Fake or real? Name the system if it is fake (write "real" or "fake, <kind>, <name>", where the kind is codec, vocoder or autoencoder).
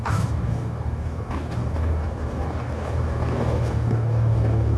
fake, codec, DAC